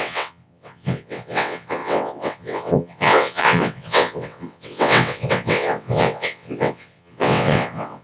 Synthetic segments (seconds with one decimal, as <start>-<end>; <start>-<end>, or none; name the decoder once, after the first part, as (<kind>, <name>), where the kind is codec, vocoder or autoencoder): 0.0-8.0 (vocoder, WaveNeXt)